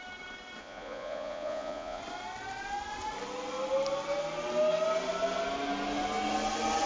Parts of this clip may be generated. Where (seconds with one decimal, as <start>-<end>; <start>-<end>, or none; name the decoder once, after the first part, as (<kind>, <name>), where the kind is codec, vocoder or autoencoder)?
0.6-2.0 (vocoder, Vocos)